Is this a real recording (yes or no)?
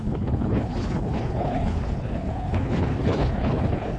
no